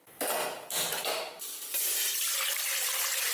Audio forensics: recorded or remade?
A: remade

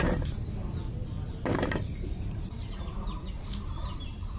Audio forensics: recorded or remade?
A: remade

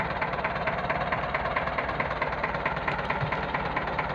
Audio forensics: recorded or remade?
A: remade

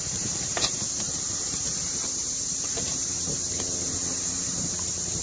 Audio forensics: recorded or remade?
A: remade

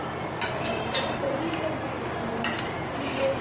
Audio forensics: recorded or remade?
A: remade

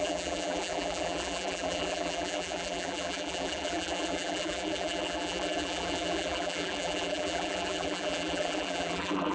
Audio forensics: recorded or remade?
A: remade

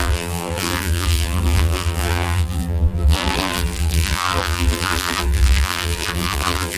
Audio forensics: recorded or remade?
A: remade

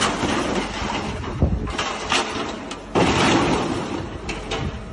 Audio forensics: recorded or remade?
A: recorded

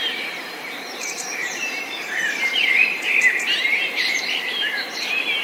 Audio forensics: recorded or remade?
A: remade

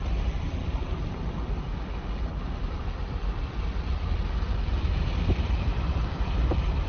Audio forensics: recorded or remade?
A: remade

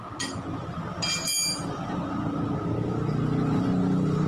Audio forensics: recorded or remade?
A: recorded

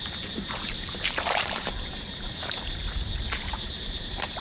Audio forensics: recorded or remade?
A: remade